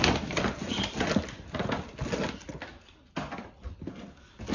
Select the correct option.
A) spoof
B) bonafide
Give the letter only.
B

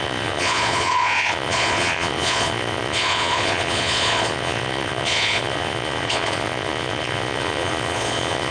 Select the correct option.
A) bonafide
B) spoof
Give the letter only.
B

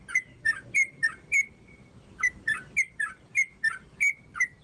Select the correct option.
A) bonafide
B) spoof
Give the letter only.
B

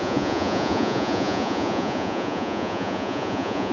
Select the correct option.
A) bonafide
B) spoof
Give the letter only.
B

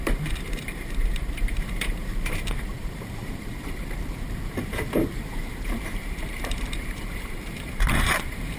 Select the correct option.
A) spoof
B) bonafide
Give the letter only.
A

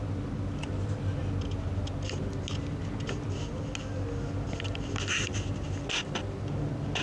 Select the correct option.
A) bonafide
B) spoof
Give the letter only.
A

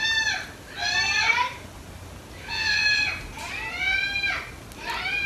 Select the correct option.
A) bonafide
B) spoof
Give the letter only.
A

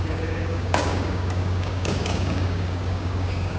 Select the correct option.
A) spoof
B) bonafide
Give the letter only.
A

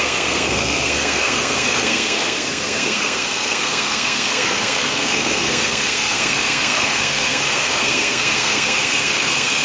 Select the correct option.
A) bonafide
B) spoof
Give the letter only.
B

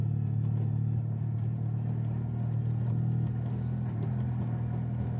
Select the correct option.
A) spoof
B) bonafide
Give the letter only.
B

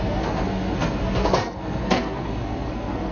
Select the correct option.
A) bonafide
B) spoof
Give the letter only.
B